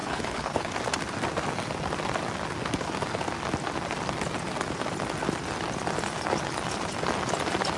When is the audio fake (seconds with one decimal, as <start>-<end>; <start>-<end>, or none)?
0.0-0.7